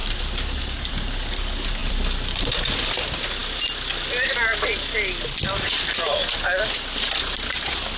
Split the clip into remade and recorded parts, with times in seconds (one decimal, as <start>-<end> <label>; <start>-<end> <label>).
0.0-0.9 remade; 0.9-1.8 recorded; 1.8-2.5 remade; 2.5-8.0 recorded